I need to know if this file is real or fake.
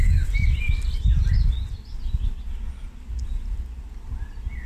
real